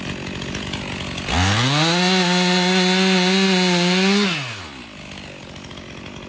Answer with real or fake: real